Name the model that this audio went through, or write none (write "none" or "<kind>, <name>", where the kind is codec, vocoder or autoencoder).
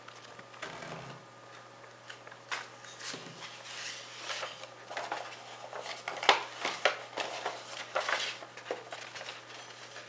none